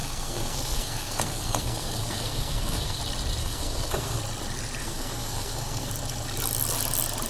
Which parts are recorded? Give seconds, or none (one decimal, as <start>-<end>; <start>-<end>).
3.0-3.4; 4.2-4.8; 5.9-7.3